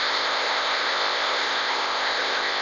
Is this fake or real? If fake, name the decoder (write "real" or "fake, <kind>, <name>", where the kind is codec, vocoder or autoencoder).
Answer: fake, codec, ZipCodec